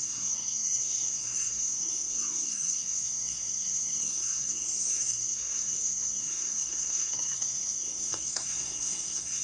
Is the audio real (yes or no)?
no